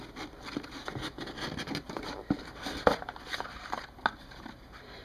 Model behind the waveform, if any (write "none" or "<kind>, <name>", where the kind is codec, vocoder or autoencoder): none